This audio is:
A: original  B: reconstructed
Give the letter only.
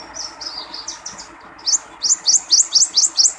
A